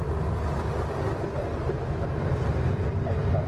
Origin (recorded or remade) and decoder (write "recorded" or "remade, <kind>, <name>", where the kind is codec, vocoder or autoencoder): recorded